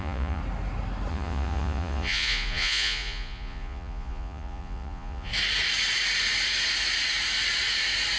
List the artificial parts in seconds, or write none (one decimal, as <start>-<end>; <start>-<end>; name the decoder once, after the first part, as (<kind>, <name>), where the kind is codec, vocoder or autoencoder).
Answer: 0.0-0.4 (vocoder, Vocos); 1.1-5.3